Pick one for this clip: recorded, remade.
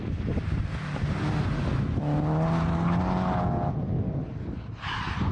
recorded